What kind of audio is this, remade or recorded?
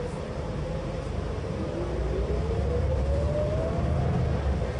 remade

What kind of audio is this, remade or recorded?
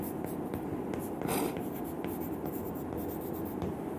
recorded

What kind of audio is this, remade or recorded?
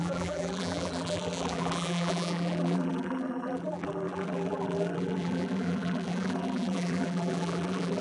remade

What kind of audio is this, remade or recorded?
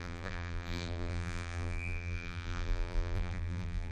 remade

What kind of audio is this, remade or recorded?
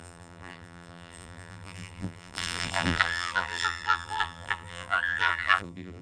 remade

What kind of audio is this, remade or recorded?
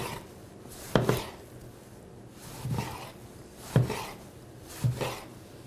remade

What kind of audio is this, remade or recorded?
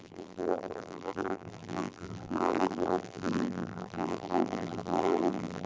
remade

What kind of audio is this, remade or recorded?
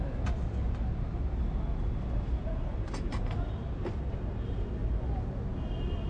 recorded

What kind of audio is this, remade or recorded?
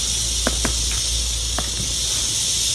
recorded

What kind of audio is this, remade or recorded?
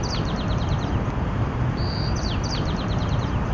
remade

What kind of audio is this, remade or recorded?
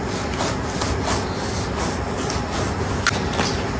recorded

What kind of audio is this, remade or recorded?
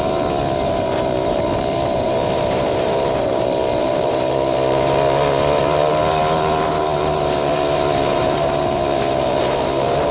remade